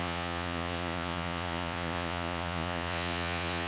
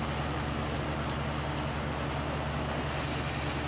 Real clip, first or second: second